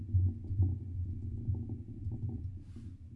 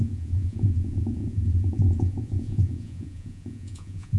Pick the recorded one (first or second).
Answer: first